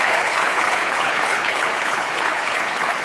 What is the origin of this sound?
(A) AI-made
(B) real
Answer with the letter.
A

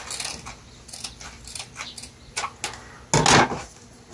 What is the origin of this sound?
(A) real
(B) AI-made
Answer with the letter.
A